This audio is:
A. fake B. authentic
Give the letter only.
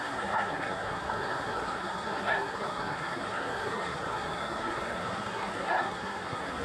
A